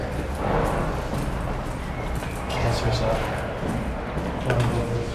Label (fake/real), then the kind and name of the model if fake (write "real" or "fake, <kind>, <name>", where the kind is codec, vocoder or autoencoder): real